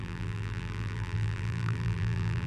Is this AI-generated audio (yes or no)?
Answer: yes